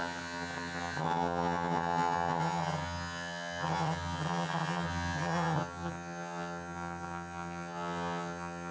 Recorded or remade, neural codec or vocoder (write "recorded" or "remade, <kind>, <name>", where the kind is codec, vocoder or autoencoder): remade, vocoder, HiFi-GAN